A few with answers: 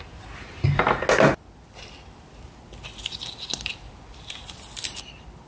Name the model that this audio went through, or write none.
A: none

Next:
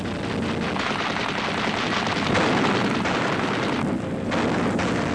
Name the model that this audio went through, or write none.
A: none